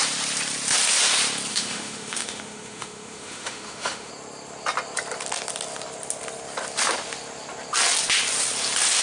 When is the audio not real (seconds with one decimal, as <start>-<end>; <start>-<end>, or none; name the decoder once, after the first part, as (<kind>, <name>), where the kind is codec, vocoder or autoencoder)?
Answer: 1.5-4.1 (autoencoder, DAC-VAE)